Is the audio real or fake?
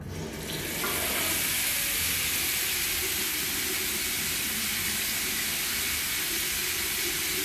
real